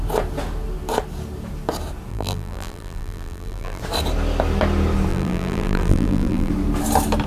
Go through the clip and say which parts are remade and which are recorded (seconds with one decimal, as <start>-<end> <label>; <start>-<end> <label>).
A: 0.0-2.1 recorded; 2.1-3.8 remade; 3.8-5.1 recorded; 5.1-6.5 remade; 6.5-7.3 recorded